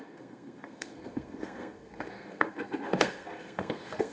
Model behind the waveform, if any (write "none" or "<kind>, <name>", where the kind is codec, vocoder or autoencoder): codec, SNAC